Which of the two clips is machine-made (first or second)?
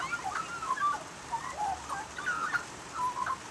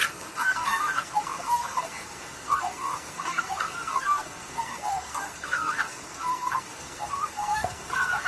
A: second